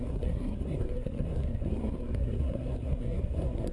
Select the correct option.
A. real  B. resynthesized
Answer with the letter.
B